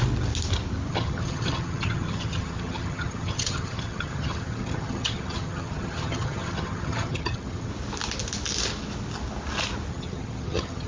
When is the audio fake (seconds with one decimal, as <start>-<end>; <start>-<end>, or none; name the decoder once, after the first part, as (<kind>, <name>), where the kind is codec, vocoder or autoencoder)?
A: 0.9-7.7 (vocoder, HiFi-GAN); 9.9-10.9